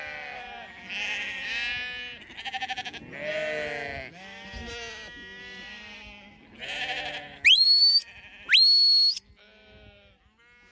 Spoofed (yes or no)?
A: no